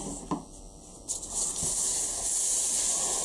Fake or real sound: real